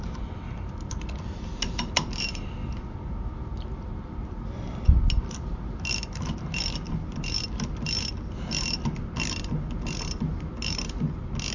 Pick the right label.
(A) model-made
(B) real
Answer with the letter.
B